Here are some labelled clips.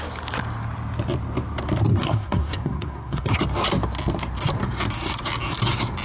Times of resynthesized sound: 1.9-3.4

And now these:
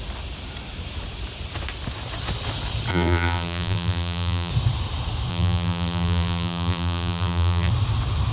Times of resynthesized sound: 2.9-4.5; 5.3-7.7